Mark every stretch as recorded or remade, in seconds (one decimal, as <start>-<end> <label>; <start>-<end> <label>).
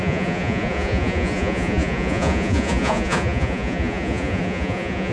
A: 0.0-5.1 remade